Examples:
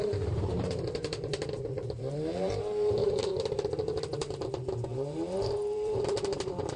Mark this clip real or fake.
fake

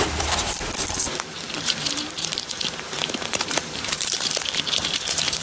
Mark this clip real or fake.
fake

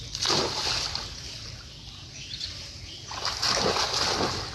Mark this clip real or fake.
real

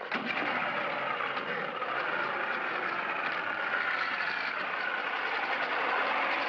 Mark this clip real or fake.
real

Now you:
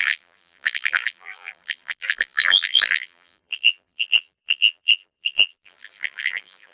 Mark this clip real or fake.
fake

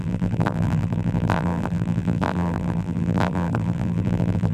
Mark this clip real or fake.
fake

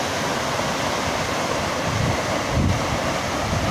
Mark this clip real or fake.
real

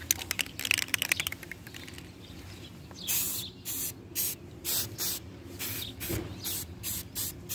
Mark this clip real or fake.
real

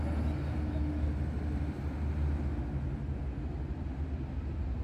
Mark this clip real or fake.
real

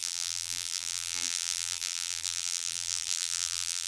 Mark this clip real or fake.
fake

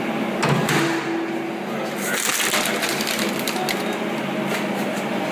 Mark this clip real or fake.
real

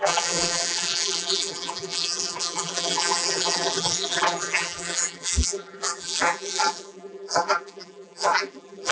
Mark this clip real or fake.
fake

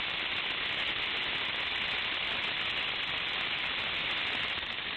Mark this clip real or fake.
real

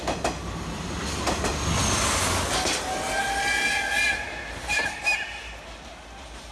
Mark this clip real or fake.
real